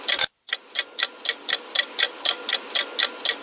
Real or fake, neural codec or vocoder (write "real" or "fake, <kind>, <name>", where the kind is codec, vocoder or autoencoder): real